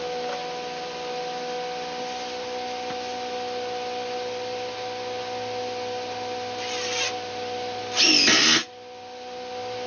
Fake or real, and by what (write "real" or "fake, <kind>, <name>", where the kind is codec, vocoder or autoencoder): real